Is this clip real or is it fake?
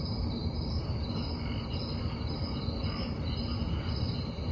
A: real